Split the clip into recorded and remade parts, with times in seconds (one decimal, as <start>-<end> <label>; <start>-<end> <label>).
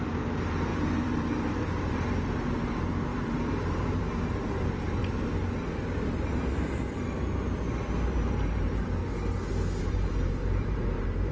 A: 0.0-5.0 remade; 5.0-8.1 recorded; 8.1-9.0 remade; 9.0-9.8 recorded; 9.8-11.3 remade